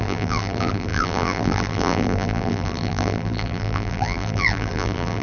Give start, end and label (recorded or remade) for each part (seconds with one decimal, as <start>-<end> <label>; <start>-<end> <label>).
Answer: 0.0-5.2 remade

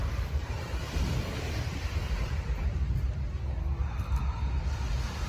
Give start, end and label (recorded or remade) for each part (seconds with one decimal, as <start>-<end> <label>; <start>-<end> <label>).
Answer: 0.0-0.4 recorded; 0.4-3.6 remade; 3.6-5.3 recorded

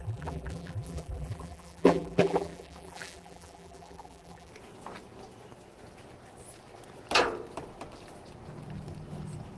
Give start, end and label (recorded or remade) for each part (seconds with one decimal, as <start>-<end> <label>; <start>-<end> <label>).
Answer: 0.0-4.5 remade; 4.5-9.6 recorded